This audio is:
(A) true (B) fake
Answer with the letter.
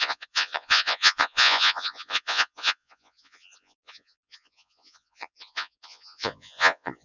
B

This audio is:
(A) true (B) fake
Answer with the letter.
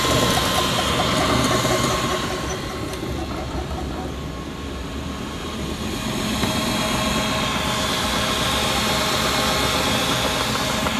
A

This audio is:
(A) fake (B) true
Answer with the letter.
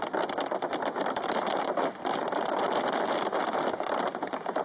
B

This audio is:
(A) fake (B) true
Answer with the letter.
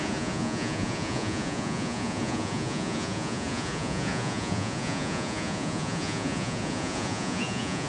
A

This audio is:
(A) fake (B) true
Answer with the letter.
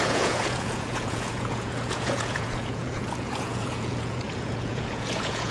A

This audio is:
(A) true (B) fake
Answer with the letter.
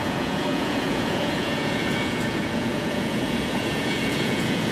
B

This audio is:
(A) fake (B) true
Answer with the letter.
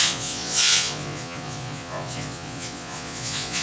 A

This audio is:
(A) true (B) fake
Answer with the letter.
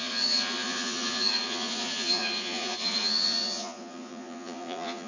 B